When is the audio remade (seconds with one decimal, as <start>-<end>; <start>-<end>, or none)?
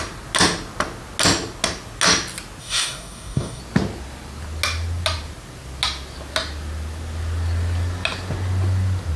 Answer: 2.6-3.6